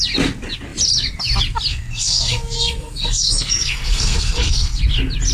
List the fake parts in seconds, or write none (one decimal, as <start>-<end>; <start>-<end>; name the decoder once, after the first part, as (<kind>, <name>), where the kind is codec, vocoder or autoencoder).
1.7-4.8 (codec, SNAC)